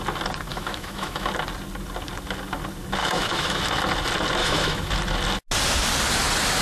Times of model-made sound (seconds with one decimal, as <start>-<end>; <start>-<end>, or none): 0.5-1.3; 3.0-3.6; 4.4-4.9